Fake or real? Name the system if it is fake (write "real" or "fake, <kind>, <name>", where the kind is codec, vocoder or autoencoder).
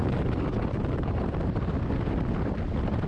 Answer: real